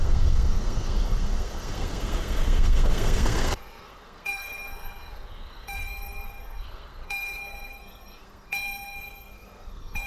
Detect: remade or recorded remade